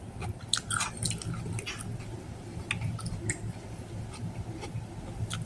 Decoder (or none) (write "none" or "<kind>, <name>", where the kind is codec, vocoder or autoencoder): none